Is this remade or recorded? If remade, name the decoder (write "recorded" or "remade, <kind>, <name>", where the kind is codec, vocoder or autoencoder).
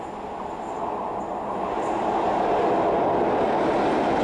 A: recorded